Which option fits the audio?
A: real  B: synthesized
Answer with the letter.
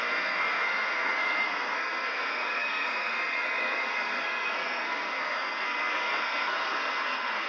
B